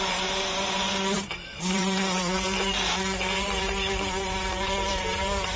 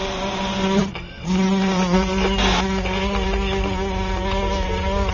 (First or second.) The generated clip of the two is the first